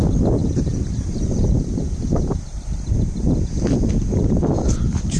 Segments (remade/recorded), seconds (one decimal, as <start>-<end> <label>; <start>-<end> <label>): 0.0-0.4 recorded; 0.4-3.5 remade; 3.5-4.1 recorded; 4.1-5.2 remade